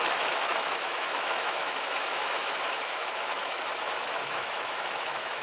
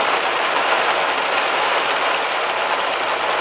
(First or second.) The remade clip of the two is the first